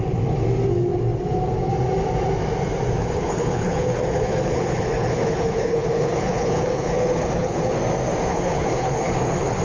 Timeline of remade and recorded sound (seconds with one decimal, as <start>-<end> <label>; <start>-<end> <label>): 0.0-3.0 recorded; 3.0-7.8 remade; 7.8-8.3 recorded; 8.3-9.6 remade